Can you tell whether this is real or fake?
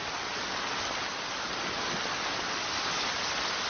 real